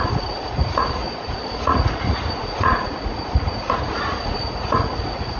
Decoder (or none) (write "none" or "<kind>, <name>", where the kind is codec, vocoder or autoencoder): vocoder, Vocos